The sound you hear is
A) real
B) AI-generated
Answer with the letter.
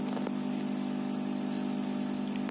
A